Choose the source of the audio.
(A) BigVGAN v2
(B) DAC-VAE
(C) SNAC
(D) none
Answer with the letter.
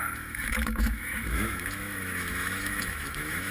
B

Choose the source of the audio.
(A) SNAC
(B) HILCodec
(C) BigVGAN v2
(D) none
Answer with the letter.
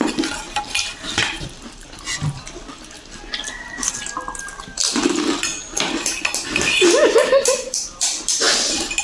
D